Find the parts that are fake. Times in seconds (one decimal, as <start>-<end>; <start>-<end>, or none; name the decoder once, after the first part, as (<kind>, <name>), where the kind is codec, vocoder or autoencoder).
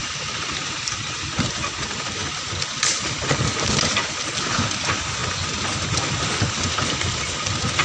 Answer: 0.0-1.6 (vocoder, BigVGAN v2)